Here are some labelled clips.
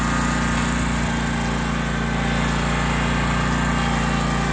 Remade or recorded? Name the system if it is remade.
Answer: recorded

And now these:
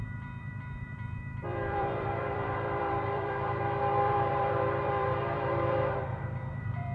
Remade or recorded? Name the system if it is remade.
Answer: remade, vocoder, BigVGAN v2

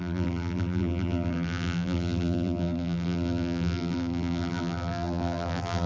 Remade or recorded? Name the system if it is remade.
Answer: remade, vocoder, BigVGAN v2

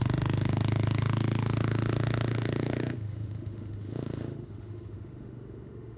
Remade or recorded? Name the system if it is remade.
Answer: remade, autoencoder, DAC-VAE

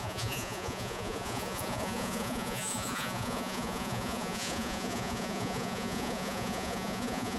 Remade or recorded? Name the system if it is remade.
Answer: remade, vocoder, Vocos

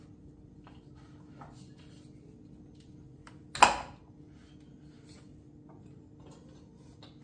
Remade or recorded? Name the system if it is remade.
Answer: recorded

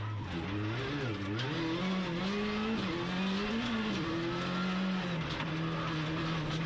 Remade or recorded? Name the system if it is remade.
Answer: recorded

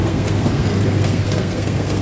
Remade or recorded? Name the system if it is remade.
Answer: remade, codec, SNAC